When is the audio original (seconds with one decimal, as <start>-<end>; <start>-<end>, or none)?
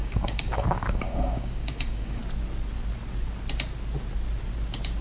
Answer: 2.2-5.0